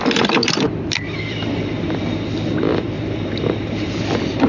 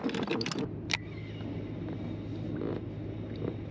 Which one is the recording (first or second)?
second